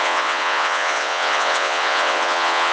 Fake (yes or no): yes